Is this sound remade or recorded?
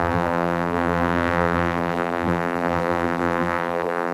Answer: remade